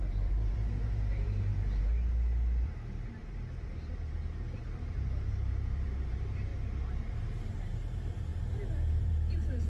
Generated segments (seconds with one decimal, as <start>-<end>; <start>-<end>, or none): 0.0-1.5; 3.1-6.5; 7.4-8.3; 9.0-9.7